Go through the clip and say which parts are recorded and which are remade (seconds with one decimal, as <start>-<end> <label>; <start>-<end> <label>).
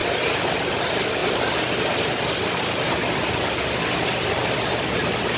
0.0-5.4 recorded